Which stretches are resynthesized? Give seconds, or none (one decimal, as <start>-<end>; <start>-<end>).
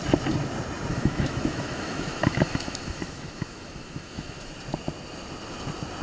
0.9-4.5